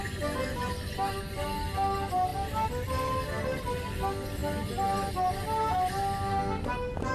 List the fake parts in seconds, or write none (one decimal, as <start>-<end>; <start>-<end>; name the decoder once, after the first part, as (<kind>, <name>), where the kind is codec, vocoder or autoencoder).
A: 2.3-4.0 (vocoder, BigVGAN v2)